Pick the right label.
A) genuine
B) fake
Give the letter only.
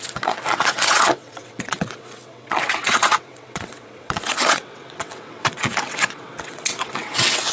B